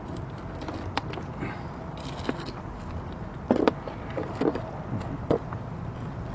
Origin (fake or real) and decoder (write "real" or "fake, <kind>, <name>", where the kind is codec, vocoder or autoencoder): real